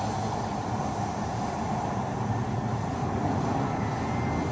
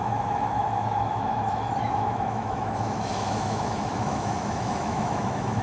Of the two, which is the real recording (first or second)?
first